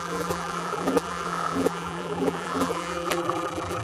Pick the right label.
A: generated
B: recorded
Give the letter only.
A